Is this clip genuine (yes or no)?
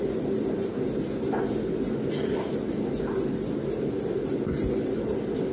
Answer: yes